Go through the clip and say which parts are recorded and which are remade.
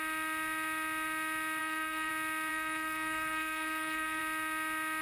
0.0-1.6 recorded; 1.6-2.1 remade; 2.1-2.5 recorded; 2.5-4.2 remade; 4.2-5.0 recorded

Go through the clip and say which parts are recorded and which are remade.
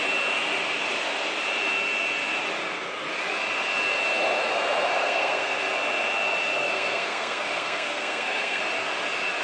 0.0-5.0 recorded; 5.0-5.6 remade; 5.6-6.6 recorded; 6.6-8.6 remade; 8.6-9.4 recorded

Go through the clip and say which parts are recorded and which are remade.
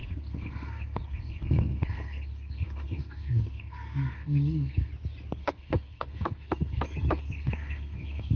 0.0-4.9 remade; 4.9-5.4 recorded; 5.4-8.4 remade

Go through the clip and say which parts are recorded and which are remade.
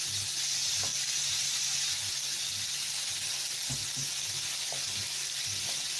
0.0-6.0 recorded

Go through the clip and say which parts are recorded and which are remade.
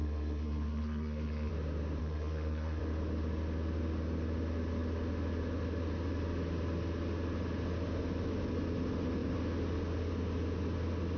0.0-1.5 remade; 1.5-2.0 recorded; 2.0-2.8 remade; 2.8-11.2 recorded